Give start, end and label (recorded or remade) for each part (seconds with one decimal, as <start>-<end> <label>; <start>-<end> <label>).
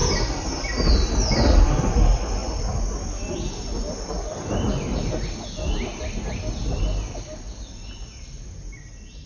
0.0-9.3 recorded